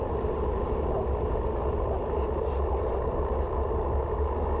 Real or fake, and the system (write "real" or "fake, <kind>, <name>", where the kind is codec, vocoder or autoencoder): real